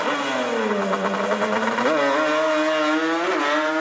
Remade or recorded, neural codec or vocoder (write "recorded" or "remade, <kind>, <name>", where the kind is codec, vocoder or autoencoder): recorded